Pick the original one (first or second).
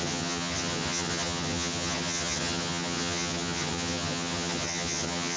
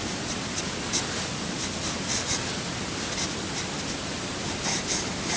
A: second